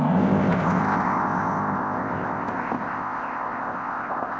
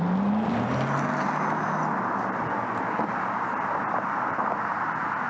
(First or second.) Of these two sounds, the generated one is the first